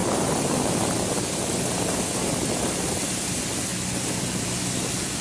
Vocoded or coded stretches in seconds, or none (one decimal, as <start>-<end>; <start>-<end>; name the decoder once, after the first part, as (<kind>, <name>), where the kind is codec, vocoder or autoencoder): 0.0-3.7 (vocoder, BigVGAN v2); 4.2-5.2